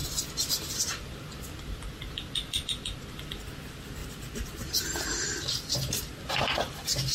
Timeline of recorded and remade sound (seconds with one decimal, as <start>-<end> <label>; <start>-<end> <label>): 0.0-4.0 recorded; 4.0-4.8 remade; 4.8-7.1 recorded